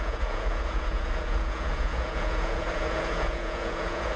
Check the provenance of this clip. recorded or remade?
remade